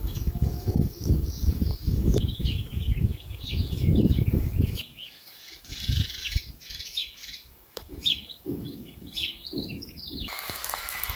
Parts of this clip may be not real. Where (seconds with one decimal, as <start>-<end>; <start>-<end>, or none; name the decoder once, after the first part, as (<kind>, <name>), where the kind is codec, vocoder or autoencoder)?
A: 0.0-11.2 (codec, DAC)